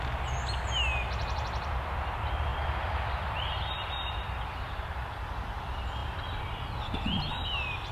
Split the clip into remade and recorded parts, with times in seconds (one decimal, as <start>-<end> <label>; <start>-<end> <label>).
0.0-7.9 recorded